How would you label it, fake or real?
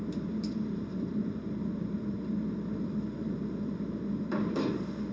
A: fake